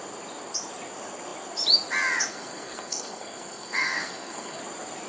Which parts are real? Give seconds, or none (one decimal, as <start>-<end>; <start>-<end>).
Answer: 0.0-2.3; 4.6-5.1